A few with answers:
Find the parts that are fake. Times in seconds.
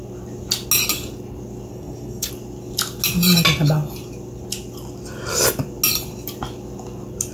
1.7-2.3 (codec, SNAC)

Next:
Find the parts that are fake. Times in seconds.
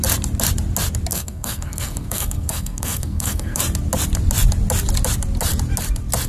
1.1-3.6 (codec, SNAC)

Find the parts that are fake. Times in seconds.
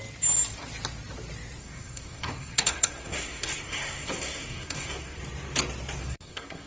1.6-5.2 (codec, SNAC); 6.0-6.7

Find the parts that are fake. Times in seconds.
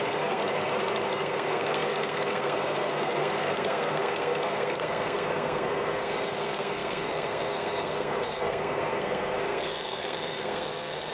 0.0-0.4 (codec, SNAC); 1.1-11.1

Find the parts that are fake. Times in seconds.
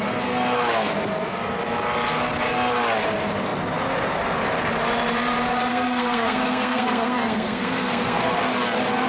5.7-8.3 (codec, SNAC)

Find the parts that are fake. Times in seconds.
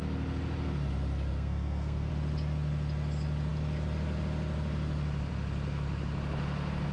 1.3-2.1 (codec, SNAC)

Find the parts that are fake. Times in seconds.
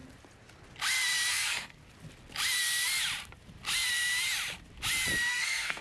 1.3-1.8 (codec, SNAC); 5.3-5.8